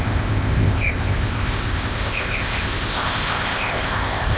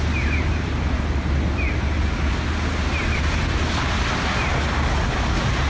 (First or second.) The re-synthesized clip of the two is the first